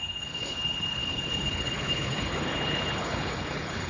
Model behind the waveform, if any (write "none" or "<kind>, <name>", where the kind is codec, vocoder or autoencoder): codec, HILCodec